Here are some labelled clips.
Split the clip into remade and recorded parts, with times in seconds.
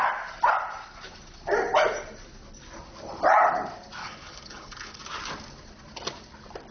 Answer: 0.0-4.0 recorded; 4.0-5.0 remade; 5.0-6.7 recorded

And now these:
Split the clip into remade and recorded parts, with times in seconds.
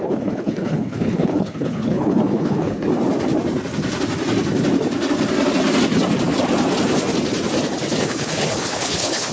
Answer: 0.0-2.9 remade; 2.9-8.0 recorded; 8.0-9.3 remade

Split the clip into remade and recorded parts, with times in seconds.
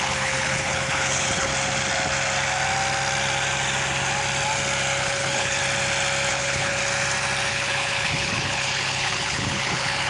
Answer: 0.0-1.5 remade; 1.5-5.0 recorded; 5.0-5.6 remade; 5.6-6.3 recorded; 6.3-6.8 remade; 6.8-7.5 recorded; 7.5-10.1 remade